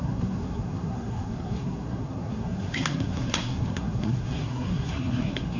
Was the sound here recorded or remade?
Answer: remade